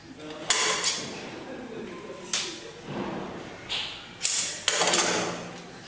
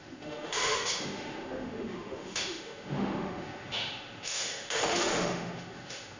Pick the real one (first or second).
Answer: first